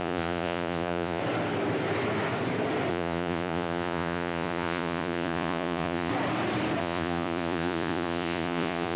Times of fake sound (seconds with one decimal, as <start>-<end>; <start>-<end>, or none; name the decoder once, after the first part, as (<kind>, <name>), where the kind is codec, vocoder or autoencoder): 0.0-1.2 (vocoder, Vocos); 2.9-6.1; 6.8-9.0